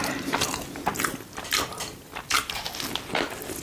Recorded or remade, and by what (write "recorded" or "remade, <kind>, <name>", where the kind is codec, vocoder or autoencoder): recorded